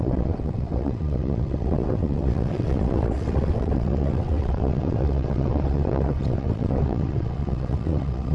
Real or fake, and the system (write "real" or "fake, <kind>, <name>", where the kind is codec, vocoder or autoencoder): fake, vocoder, WaveNeXt